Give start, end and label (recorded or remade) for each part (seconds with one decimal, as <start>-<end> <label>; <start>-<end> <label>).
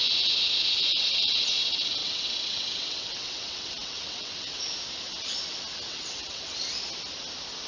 0.0-0.9 recorded; 0.9-1.5 remade; 1.5-2.0 recorded; 2.0-4.6 remade; 4.6-5.9 recorded; 5.9-6.5 remade; 6.5-7.7 recorded